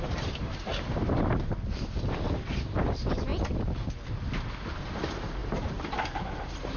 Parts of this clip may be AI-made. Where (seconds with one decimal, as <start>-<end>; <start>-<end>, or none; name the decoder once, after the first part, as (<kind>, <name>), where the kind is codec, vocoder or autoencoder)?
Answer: 0.0-0.7 (vocoder, BigVGAN v2); 2.8-3.3; 4.8-6.8